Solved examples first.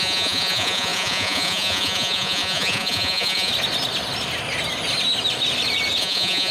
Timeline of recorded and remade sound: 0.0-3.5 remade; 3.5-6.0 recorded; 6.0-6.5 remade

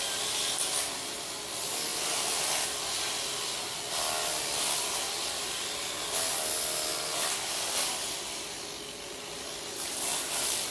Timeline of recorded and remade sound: 0.0-10.7 recorded